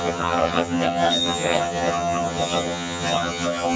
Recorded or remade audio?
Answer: remade